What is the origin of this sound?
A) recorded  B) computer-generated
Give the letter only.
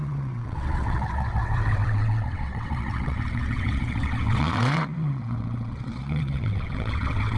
B